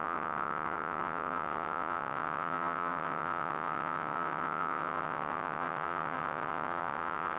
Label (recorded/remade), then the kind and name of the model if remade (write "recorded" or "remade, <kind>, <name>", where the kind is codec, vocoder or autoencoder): remade, vocoder, WaveNeXt